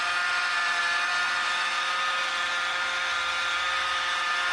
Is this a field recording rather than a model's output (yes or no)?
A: yes